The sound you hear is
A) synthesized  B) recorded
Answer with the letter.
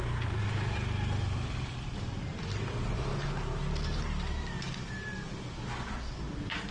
B